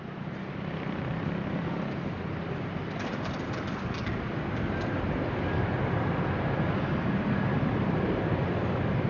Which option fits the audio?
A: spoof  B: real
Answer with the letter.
B